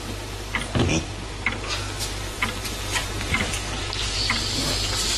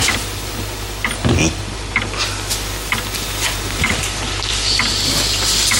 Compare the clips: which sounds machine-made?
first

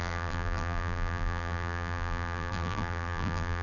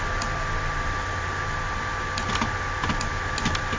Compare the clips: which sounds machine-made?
first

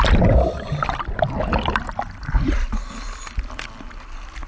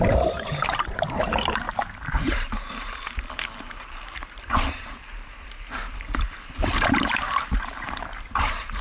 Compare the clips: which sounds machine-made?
second